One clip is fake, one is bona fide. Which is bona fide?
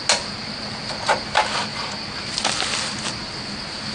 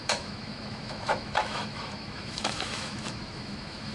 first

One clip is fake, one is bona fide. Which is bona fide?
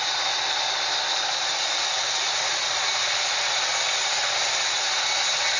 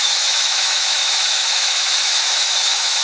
first